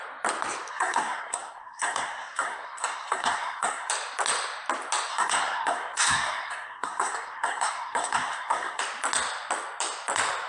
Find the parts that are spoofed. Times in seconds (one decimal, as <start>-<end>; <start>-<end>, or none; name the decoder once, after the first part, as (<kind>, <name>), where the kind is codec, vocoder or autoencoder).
0.7-3.9 (codec, SNAC); 5.1-8.8

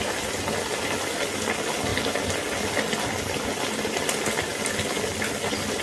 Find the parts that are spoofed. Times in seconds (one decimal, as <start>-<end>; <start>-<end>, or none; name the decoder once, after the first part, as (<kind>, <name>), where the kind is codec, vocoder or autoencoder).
none